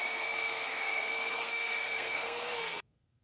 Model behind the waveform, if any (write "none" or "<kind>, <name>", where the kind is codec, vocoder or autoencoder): codec, SNAC